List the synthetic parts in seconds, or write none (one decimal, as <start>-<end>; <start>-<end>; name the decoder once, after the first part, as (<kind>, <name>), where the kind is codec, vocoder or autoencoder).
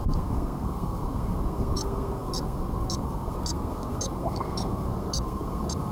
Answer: 0.0-5.9 (codec, SNAC)